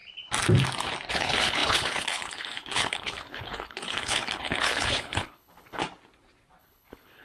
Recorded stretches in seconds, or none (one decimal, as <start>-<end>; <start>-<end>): 0.0-1.1; 5.8-6.6